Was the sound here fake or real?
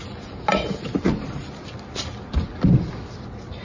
real